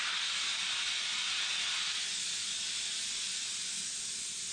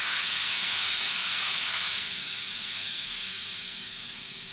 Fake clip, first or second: second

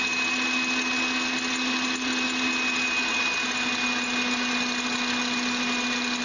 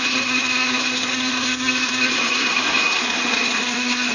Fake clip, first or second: second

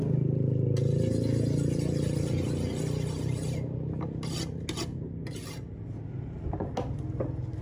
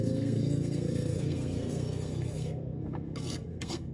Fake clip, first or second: second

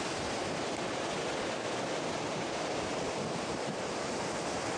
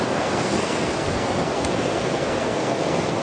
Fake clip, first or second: second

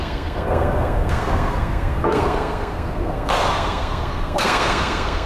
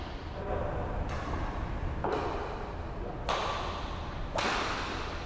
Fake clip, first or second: first